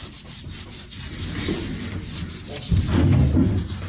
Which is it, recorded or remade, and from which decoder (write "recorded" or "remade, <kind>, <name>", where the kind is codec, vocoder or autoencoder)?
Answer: recorded